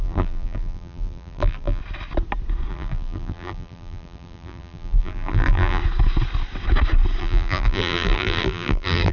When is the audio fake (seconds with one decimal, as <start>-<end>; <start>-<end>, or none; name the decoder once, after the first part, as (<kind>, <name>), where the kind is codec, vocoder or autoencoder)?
0.0-1.8 (vocoder, BigVGAN v2); 2.7-5.8; 7.2-9.1